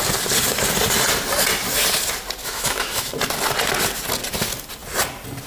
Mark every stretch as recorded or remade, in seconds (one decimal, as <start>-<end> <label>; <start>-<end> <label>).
0.0-2.4 recorded; 2.4-3.1 remade; 3.1-5.5 recorded